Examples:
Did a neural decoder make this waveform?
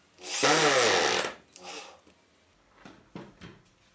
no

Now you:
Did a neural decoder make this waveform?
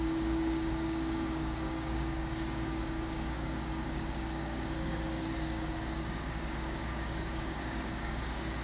yes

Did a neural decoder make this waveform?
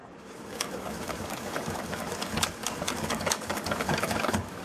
yes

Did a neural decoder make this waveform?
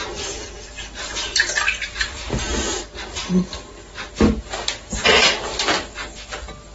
no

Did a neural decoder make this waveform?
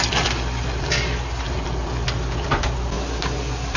no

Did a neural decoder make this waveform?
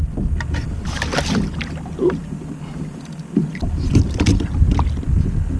no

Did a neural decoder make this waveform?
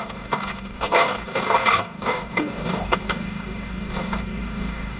yes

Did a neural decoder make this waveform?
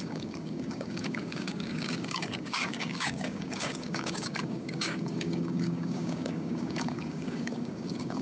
yes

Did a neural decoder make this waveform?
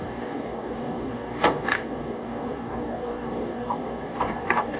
yes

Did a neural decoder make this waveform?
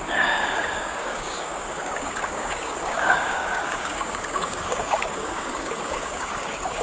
yes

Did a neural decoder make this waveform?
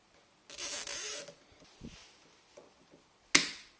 no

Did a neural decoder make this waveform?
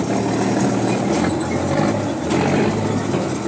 no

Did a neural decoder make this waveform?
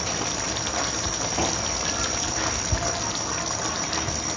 no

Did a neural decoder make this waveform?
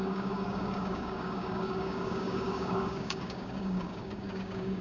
yes